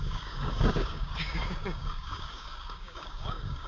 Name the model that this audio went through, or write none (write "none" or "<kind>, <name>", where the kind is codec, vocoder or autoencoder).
codec, DAC